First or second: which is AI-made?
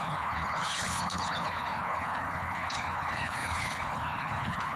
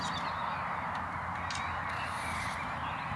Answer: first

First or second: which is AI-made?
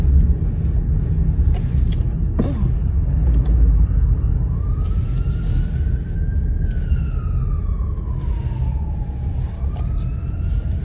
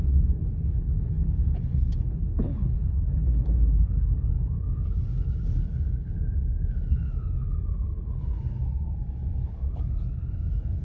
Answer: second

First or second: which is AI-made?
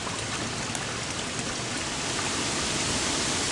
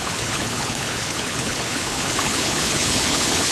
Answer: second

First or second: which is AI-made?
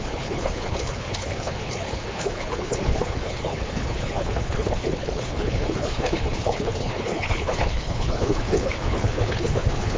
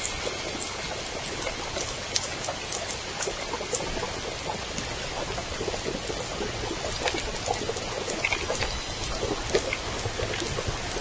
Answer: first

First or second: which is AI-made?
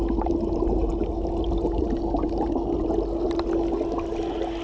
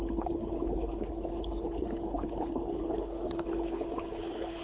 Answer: second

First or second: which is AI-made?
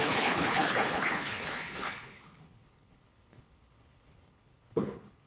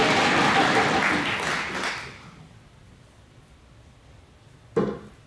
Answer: first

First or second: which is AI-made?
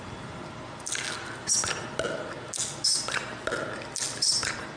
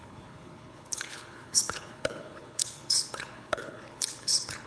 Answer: second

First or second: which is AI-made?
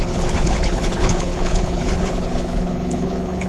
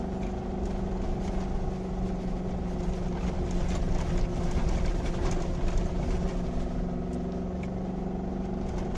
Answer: first